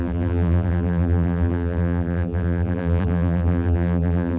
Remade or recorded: remade